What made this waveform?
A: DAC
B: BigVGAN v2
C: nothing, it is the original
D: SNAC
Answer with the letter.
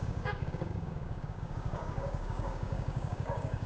A